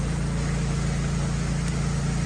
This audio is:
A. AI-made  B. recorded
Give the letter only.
B